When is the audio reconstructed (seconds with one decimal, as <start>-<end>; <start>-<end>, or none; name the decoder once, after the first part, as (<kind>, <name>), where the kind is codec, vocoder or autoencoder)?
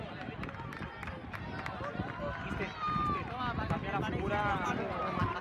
none